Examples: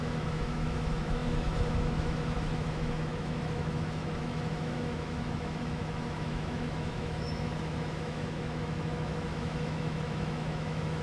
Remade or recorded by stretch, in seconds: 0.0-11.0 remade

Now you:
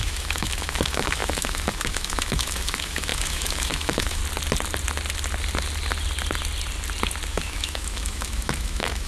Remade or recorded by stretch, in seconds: 0.0-4.2 remade; 4.2-7.3 recorded; 7.3-9.1 remade

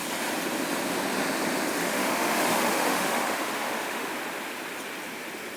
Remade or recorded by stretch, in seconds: 0.0-1.8 recorded; 1.8-4.1 remade; 4.1-5.6 recorded